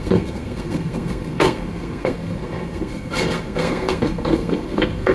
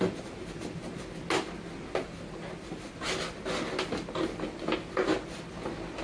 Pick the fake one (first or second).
first